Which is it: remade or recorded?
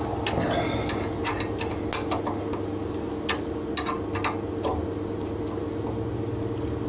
recorded